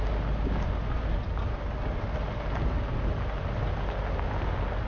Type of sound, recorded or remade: recorded